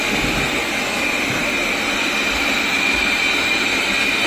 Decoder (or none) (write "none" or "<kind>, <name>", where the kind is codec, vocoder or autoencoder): none